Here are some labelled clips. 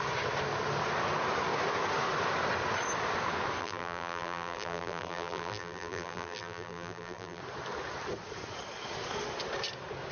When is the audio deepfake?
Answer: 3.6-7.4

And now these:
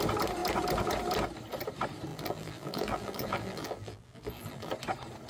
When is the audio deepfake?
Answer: 2.1-4.7

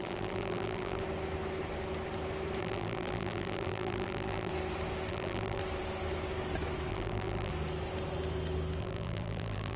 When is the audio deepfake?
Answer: 0.0-1.0; 2.6-4.5; 5.1-5.6; 6.9-7.5; 8.8-9.8

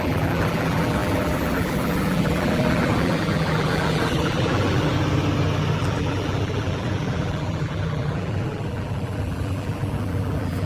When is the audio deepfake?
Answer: 0.0-4.9; 5.8-10.7

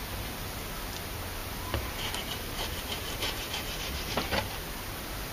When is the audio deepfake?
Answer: 1.4-4.6

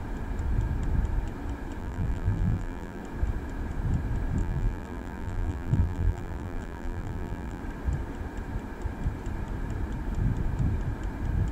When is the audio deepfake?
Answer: 1.8-3.0; 4.4-7.6